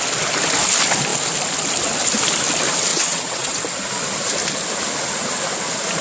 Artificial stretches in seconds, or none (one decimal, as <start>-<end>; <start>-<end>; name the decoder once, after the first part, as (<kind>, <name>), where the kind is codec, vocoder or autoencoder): 2.9-3.6 (vocoder, WaveNeXt)